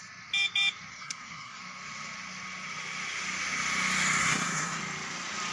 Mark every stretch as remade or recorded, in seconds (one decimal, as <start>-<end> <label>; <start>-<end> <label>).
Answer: 0.0-0.9 recorded; 0.9-1.6 remade; 1.6-4.2 recorded; 4.2-4.8 remade; 4.8-5.5 recorded